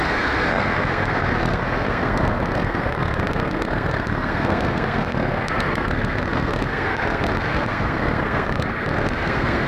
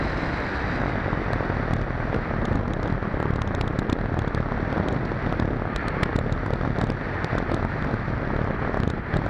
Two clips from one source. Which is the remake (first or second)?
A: first